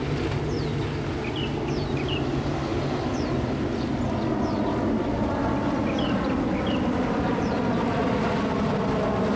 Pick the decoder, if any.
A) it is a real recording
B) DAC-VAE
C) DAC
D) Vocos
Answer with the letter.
A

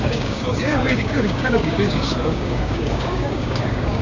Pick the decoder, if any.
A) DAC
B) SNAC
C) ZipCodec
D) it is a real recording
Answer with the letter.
A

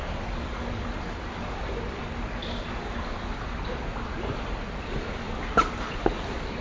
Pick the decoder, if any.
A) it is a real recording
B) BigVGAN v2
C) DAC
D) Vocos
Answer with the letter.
A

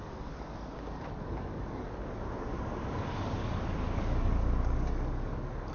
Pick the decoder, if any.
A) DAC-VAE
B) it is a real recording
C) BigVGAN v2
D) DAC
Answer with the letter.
D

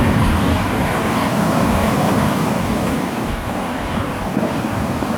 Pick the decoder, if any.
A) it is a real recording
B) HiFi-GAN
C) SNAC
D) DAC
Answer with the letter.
D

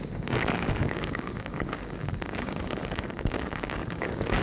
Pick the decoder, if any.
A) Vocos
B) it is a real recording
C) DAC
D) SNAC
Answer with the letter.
C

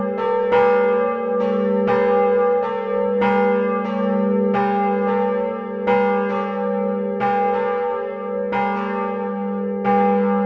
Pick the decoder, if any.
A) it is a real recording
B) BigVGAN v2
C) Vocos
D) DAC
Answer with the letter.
A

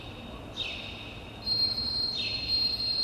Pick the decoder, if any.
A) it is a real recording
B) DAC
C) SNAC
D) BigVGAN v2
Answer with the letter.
A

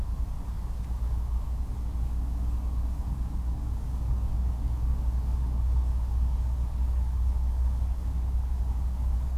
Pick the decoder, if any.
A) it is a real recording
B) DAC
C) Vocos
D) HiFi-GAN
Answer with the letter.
B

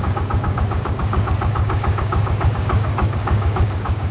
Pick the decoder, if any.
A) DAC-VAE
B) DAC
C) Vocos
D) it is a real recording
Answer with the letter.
B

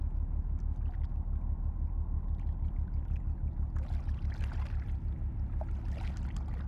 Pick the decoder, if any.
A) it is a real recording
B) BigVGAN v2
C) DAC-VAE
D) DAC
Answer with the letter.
A